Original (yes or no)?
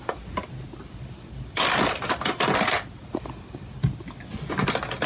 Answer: yes